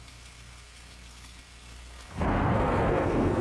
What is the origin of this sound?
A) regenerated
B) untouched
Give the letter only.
A